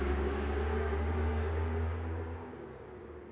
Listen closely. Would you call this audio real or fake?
fake